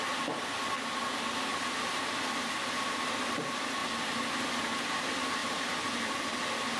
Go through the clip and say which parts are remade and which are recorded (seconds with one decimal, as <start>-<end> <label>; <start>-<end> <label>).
0.0-1.5 recorded; 1.5-2.6 remade; 2.6-5.4 recorded; 5.4-6.3 remade; 6.3-6.8 recorded